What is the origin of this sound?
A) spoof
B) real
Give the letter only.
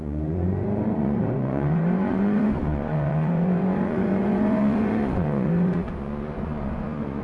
A